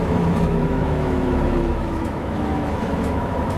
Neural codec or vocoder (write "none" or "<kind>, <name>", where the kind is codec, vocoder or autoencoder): autoencoder, DAC-VAE